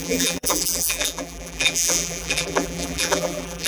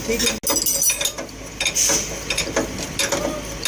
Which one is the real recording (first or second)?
second